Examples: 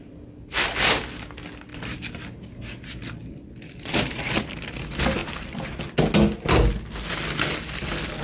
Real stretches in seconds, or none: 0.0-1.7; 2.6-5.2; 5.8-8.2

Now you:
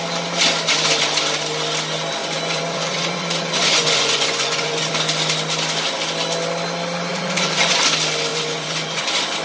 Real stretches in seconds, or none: 0.0-2.2; 4.9-7.1; 7.8-8.3; 9.0-9.4

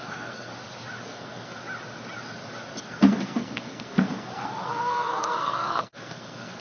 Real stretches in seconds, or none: 0.5-1.0; 1.6-2.8

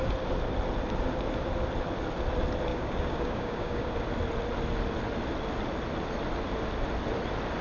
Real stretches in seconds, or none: 0.0-2.7; 3.9-7.6

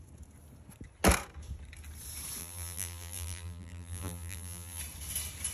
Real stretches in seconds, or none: 0.0-2.4; 4.8-5.5

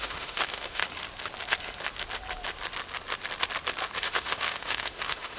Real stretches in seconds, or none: 0.8-4.0